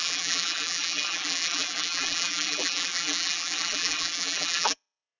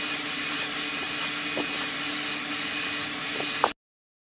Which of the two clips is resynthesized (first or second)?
first